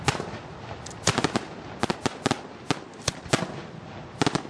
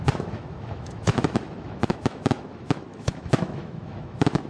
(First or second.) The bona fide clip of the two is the first